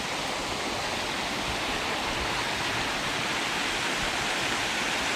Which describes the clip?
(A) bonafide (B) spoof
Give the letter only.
A